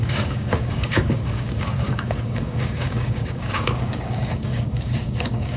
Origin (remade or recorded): remade